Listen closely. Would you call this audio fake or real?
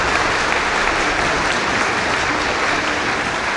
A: fake